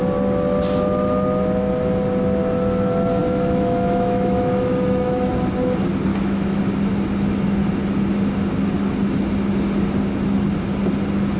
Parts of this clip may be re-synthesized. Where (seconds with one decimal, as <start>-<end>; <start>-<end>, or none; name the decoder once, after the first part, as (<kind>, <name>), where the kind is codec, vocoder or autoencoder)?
3.2-5.3 (autoencoder, DAC-VAE); 6.1-6.6